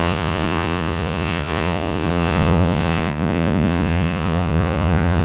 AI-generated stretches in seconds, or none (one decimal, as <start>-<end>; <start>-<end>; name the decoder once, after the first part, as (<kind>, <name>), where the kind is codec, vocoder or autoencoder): 0.0-5.2 (vocoder, Vocos)